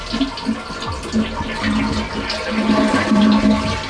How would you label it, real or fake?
real